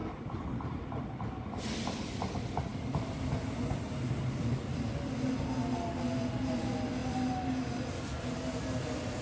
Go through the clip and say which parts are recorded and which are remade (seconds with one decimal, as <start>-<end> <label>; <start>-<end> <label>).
0.0-9.2 recorded